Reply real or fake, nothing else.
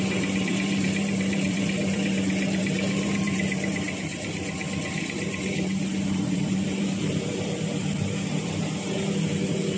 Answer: fake